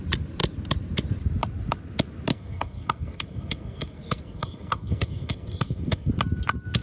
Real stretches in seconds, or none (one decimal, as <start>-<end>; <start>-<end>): 0.0-2.3; 6.1-6.8